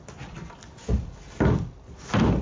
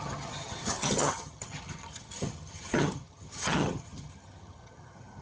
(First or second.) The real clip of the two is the first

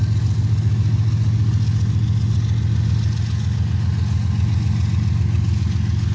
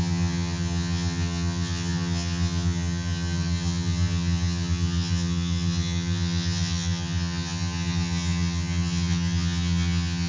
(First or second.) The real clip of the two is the first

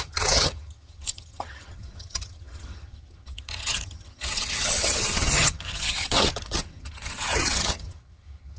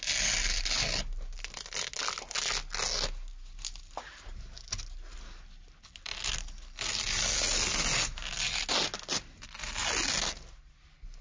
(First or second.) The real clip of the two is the second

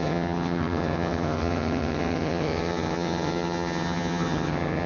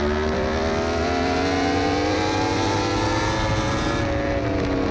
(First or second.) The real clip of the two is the second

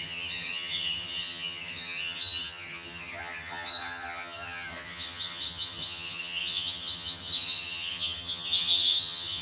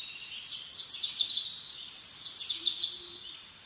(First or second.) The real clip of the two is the second